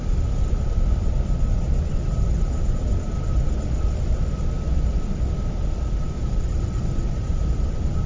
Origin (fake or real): real